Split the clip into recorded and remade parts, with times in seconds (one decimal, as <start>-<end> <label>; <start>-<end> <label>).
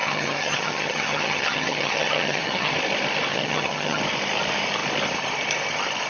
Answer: 0.0-2.7 remade; 2.7-3.3 recorded; 3.3-4.0 remade; 4.0-6.1 recorded